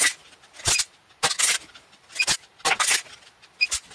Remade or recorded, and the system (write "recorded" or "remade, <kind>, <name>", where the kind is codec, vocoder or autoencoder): recorded